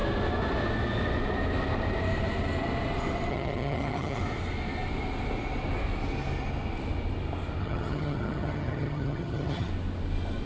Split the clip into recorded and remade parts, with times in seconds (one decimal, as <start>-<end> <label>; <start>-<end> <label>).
0.0-3.3 recorded; 3.3-4.2 remade; 4.2-7.6 recorded; 7.6-9.7 remade; 9.7-10.5 recorded